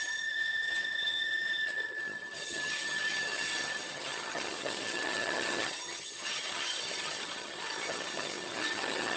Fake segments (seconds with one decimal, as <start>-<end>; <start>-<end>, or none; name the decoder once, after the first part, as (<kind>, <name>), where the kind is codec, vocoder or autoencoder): 0.0-9.2 (vocoder, HiFi-GAN)